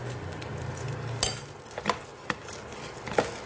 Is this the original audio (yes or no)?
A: yes